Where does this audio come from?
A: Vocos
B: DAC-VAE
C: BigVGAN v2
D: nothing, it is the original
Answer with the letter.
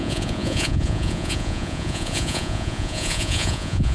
A